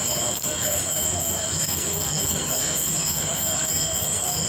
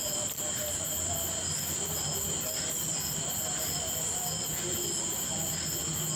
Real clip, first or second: second